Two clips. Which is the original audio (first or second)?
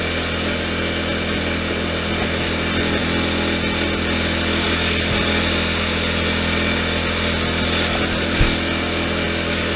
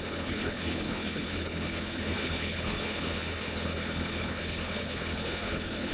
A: first